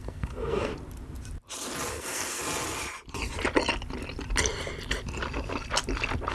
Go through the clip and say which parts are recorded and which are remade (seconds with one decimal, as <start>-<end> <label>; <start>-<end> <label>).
0.0-0.7 remade; 0.7-1.9 recorded; 1.9-2.4 remade; 2.4-6.3 recorded